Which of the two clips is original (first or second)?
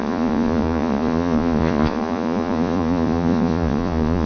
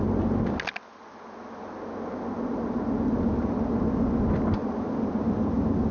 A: second